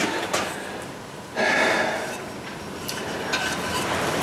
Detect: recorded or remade recorded